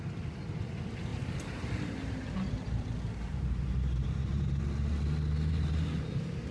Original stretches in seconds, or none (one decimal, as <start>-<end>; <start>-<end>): 0.0-1.1; 4.6-6.5